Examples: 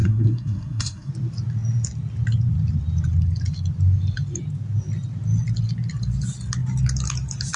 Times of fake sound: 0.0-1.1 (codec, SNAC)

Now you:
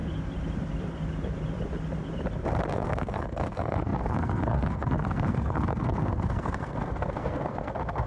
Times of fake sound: 2.7-8.1 (codec, SNAC)

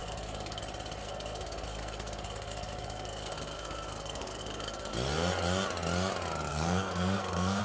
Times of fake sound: 0.0-0.6 (codec, SNAC); 1.0-4.9; 6.5-7.6

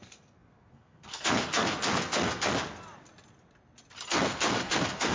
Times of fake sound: 0.0-2.5 (codec, SNAC); 4.1-5.1

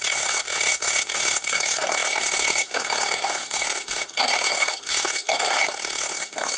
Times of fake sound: 0.0-6.6 (codec, SNAC)

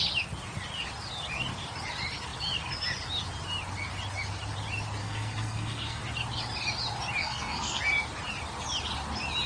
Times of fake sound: 5.0-6.0 (codec, SNAC); 7.2-7.8

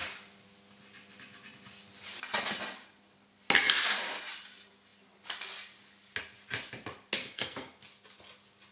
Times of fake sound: 7.2-7.8 (codec, SNAC)